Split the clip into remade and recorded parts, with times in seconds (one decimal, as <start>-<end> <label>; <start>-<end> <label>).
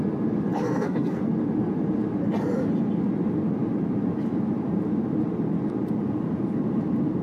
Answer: 0.0-0.6 recorded; 0.6-1.3 remade; 1.3-7.2 recorded